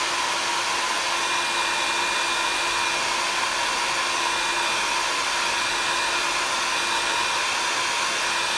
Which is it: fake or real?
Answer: real